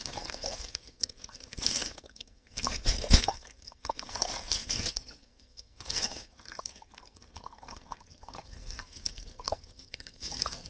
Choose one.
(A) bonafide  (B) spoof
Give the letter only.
B